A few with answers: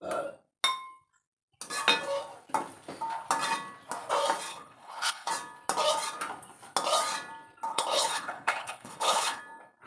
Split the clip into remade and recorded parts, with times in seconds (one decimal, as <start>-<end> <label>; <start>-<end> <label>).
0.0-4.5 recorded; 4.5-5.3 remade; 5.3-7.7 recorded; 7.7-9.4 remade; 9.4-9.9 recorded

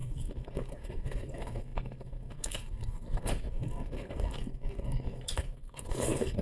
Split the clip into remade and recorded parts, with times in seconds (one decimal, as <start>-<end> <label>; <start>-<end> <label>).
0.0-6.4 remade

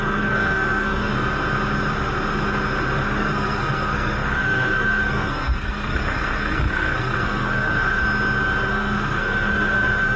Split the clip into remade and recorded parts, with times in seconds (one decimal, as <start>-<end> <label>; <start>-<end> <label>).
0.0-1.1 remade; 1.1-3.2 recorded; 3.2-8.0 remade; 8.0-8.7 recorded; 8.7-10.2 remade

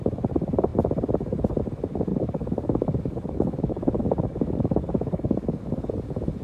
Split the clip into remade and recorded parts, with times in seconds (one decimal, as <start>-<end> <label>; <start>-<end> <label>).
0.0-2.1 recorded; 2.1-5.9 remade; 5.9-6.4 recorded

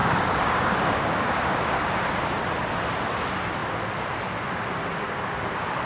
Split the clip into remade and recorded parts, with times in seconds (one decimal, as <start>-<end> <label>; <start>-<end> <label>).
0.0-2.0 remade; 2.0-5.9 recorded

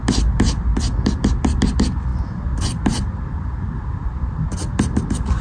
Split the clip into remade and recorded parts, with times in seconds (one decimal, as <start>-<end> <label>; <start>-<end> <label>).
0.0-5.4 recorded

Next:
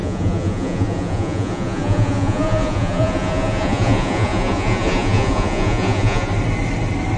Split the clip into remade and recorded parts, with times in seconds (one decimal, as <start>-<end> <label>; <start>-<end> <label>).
0.0-6.3 remade; 6.3-7.2 recorded

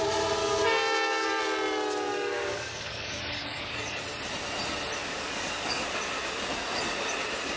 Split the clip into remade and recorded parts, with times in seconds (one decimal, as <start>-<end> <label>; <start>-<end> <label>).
0.0-0.4 recorded; 0.4-1.4 remade; 1.4-2.1 recorded; 2.1-4.0 remade; 4.0-5.0 recorded; 5.0-6.0 remade; 6.0-7.6 recorded